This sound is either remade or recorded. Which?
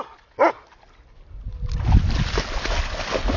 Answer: recorded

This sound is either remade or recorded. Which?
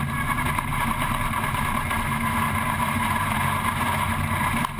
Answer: remade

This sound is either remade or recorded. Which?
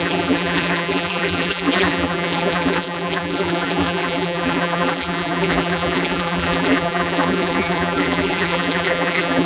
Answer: remade